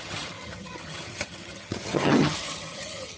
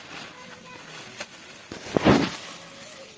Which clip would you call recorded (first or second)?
second